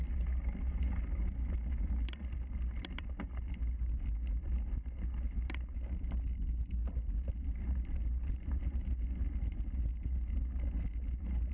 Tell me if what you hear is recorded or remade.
recorded